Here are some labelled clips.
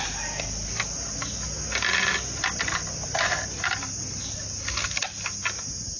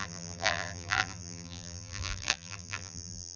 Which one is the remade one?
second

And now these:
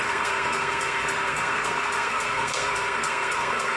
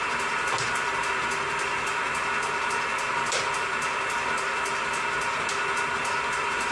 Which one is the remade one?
first